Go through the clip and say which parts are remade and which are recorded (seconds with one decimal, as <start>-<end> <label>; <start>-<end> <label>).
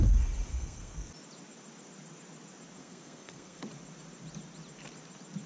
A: 0.0-0.5 recorded; 0.5-1.1 remade; 1.1-2.8 recorded; 2.8-3.6 remade; 3.6-5.5 recorded